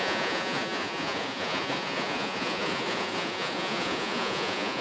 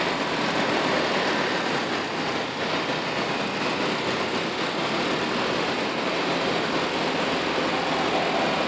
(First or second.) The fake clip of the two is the first